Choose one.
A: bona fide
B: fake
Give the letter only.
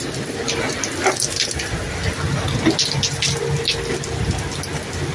A